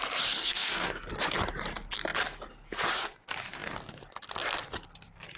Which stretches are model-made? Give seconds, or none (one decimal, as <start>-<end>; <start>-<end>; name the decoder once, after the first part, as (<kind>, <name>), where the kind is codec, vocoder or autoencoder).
0.4-1.1 (codec, SNAC)